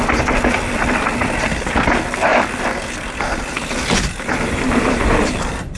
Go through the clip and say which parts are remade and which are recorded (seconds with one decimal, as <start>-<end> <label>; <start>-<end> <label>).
0.0-5.8 recorded